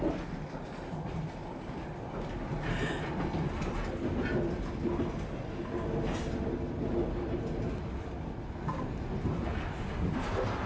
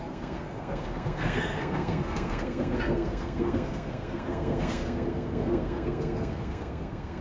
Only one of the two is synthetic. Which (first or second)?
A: second